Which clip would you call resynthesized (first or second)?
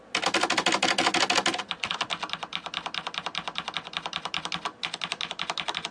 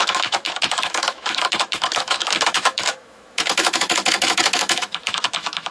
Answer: second